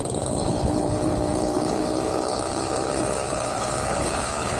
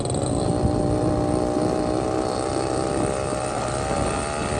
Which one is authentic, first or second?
second